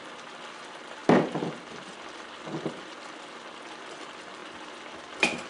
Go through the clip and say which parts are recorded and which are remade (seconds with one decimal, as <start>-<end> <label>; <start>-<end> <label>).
0.0-5.5 recorded